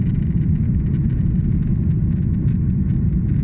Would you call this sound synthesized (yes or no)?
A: no